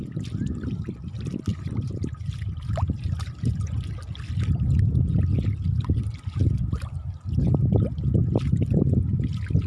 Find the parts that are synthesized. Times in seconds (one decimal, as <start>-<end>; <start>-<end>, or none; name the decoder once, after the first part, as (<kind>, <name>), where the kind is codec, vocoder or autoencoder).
1.5-3.9 (vocoder, BigVGAN v2)